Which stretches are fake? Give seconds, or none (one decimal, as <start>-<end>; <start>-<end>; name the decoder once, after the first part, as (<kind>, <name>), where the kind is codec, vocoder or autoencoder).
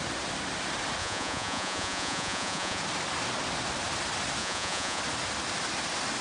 1.0-2.8 (vocoder, Vocos); 4.4-5.0